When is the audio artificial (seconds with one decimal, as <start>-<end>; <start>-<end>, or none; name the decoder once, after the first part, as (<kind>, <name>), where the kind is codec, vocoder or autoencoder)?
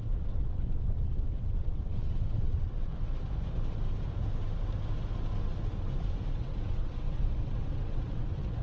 0.0-2.9 (vocoder, WaveNeXt); 6.3-8.6